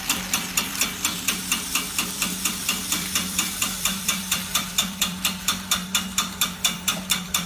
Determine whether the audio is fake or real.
fake